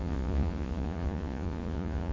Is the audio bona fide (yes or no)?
no